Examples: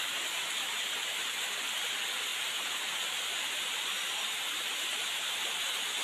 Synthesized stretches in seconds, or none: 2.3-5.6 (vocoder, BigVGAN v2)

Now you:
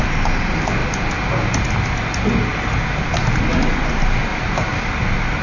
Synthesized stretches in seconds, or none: 2.5-3.1 (vocoder, BigVGAN v2); 4.3-5.0

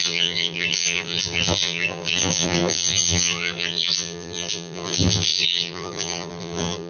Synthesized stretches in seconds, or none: 0.0-6.9 (vocoder, BigVGAN v2)

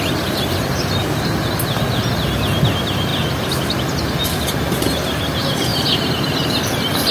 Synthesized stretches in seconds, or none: 5.7-7.1 (vocoder, BigVGAN v2)

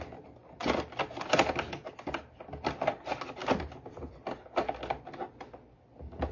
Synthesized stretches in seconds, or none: 0.4-1.0 (vocoder, BigVGAN v2)

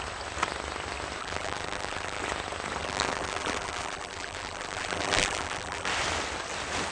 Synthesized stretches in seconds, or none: 1.2-2.2 (vocoder, BigVGAN v2); 2.8-5.9

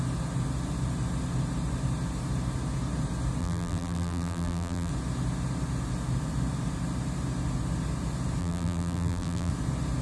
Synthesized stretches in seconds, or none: 3.4-4.9 (vocoder, BigVGAN v2); 8.4-9.5

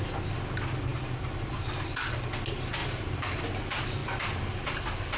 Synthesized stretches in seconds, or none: 0.9-1.7 (vocoder, BigVGAN v2); 2.8-3.4